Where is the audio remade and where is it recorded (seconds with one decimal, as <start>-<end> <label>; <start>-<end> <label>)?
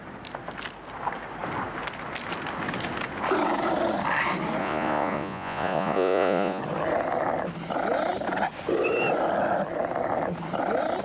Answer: 0.0-4.6 recorded; 4.6-6.6 remade; 6.6-11.0 recorded